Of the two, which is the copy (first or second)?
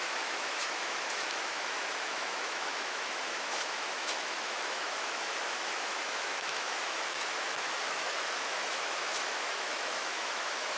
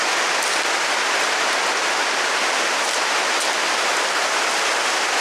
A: first